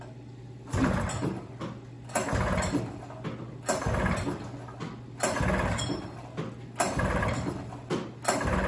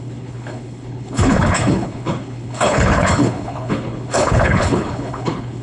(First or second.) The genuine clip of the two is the first